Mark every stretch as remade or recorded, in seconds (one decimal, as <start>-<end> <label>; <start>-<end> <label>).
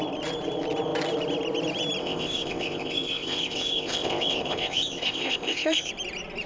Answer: 0.0-2.0 recorded; 2.0-5.9 remade; 5.9-6.5 recorded